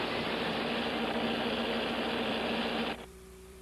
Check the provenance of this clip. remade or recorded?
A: remade